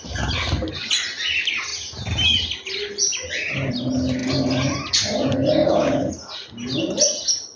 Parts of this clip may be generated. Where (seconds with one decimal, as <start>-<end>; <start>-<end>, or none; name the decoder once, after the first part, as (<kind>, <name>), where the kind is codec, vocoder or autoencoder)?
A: 5.6-6.1 (codec, DAC)